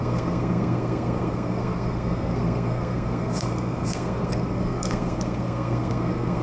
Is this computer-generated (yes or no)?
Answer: yes